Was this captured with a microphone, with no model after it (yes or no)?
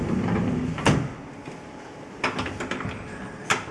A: yes